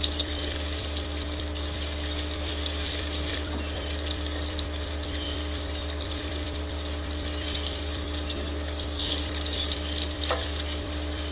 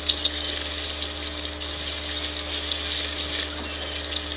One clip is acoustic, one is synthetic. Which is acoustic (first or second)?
second